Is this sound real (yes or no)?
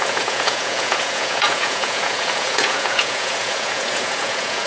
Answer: no